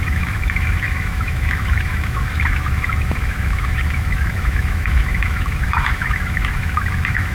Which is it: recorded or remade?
remade